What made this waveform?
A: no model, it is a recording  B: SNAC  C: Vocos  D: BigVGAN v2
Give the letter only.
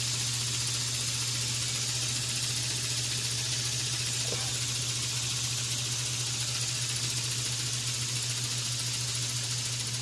A